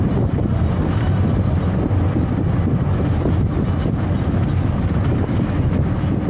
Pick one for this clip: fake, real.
real